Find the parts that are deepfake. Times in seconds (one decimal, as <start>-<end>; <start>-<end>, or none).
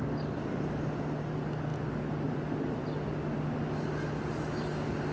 none